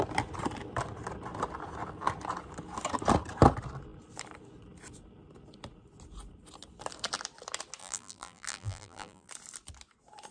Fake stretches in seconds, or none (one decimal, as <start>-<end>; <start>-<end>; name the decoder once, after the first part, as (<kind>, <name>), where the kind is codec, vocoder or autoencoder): 7.8-9.3 (vocoder, BigVGAN v2)